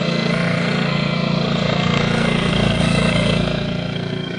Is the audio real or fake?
fake